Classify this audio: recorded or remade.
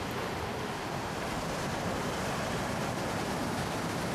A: recorded